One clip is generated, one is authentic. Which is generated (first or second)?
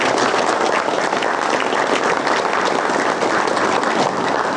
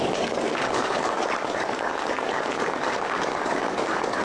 second